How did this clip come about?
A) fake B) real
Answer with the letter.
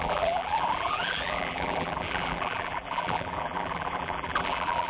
A